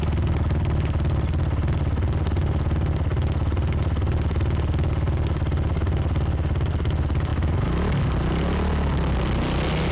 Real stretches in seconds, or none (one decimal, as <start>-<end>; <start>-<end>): 0.0-9.9